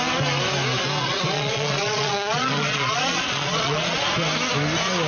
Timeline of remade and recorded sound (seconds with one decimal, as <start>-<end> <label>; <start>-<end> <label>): 0.0-1.0 recorded; 1.0-4.1 remade; 4.1-5.1 recorded